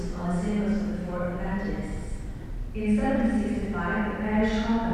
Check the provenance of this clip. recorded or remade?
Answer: recorded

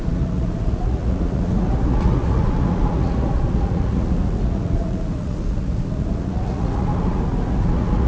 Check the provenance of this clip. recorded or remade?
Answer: remade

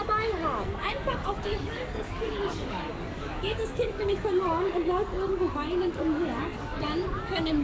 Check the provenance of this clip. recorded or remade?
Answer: remade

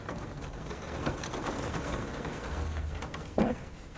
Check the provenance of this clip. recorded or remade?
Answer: remade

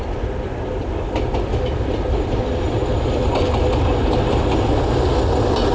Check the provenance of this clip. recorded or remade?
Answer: recorded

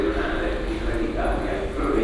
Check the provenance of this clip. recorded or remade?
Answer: recorded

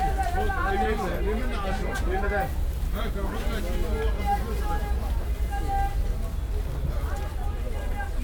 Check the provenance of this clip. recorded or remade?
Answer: recorded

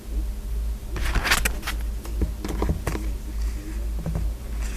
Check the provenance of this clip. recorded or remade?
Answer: recorded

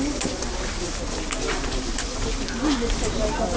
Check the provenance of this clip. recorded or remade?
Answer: recorded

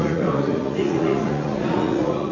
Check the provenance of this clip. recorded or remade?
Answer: remade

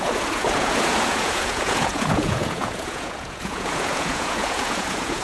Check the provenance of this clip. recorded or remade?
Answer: remade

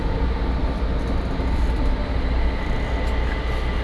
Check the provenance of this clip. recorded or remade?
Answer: recorded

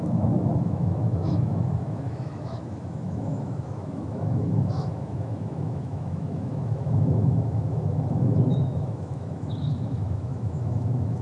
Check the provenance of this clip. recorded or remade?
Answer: remade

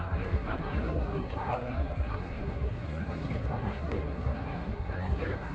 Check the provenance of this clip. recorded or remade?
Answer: remade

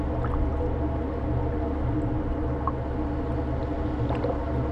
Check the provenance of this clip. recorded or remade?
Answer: recorded